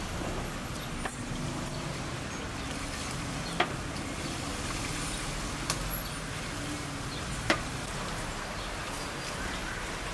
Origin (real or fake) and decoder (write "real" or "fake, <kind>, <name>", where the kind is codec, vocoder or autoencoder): real